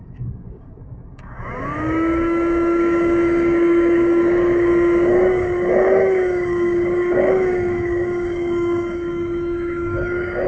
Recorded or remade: remade